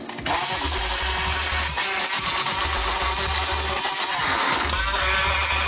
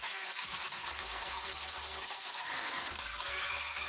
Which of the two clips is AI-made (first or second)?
second